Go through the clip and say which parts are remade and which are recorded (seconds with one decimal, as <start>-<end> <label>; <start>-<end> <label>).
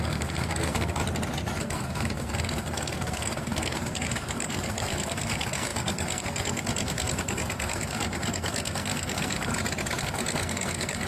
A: 0.0-1.0 remade; 1.0-1.6 recorded; 1.6-9.5 remade; 9.5-10.0 recorded; 10.0-11.1 remade